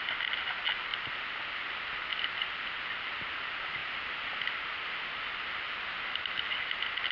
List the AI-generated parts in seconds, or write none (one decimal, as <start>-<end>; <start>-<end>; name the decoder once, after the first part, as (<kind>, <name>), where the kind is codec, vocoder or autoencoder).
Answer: none